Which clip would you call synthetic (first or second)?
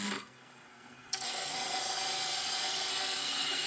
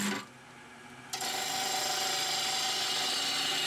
first